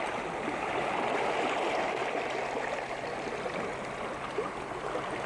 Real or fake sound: real